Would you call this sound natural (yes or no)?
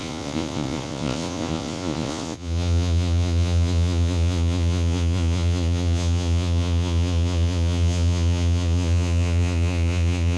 no